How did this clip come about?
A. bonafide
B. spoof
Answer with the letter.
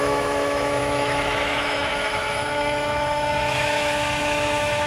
B